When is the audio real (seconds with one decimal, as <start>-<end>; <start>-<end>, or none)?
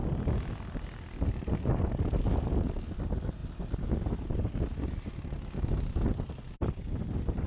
0.0-7.5